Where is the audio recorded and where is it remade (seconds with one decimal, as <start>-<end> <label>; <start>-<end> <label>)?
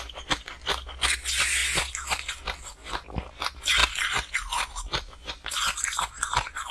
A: 0.0-6.7 recorded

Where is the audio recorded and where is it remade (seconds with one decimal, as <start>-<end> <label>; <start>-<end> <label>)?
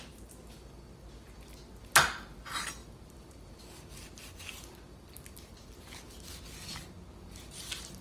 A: 0.0-2.8 recorded; 2.8-3.7 remade; 3.7-8.0 recorded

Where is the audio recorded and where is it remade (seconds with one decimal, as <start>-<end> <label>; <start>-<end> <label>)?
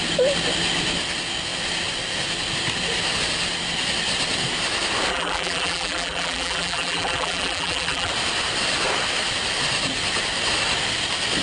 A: 0.0-5.1 recorded; 5.1-8.1 remade; 8.1-11.4 recorded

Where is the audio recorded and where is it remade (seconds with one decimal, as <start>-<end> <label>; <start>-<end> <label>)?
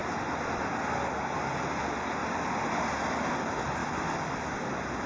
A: 0.0-0.8 remade; 0.8-3.8 recorded; 3.8-5.1 remade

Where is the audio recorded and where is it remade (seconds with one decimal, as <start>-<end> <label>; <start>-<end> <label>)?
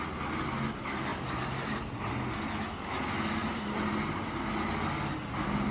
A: 0.0-1.1 recorded; 1.1-2.1 remade; 2.1-3.4 recorded; 3.4-4.4 remade; 4.4-5.7 recorded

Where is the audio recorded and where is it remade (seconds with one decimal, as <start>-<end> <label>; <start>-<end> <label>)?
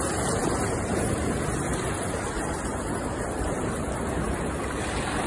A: 0.0-0.4 recorded; 0.4-1.0 remade; 1.0-1.7 recorded; 1.7-5.3 remade